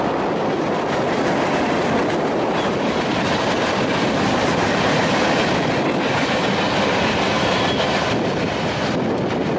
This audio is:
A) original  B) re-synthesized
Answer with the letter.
A